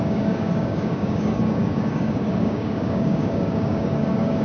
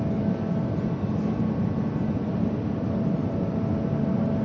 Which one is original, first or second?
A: second